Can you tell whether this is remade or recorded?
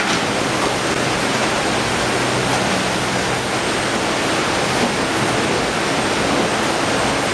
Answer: recorded